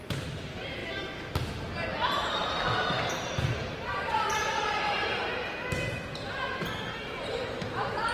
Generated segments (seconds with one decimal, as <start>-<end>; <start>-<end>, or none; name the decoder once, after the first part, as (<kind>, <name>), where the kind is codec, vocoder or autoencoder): 0.0-0.8 (vocoder, BigVGAN v2); 3.1-5.4; 5.9-8.1